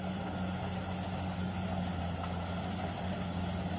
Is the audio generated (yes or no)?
no